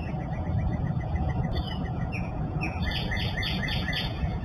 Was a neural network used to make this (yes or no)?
yes